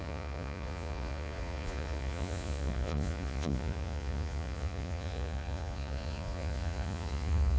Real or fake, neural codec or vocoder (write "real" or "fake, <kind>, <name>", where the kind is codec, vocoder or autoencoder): fake, vocoder, Vocos